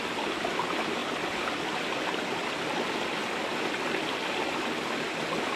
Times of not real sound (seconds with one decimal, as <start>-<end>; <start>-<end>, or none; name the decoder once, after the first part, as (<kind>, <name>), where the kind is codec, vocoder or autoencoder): 3.2-3.9 (vocoder, BigVGAN v2)